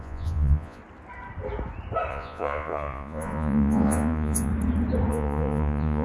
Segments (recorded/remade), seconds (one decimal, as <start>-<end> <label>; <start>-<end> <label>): 0.0-0.8 remade; 0.8-2.1 recorded; 2.1-4.5 remade; 4.5-5.1 recorded; 5.1-6.0 remade